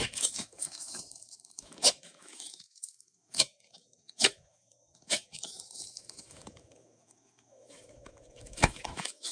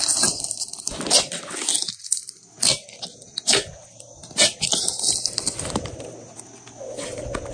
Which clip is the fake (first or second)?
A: first